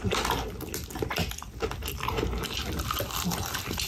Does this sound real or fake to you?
real